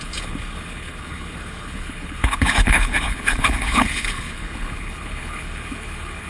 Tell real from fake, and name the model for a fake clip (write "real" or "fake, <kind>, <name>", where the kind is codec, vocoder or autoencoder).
fake, codec, HILCodec